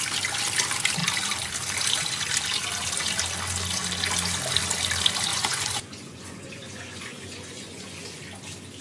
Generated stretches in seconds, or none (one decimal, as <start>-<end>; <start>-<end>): 5.3-8.2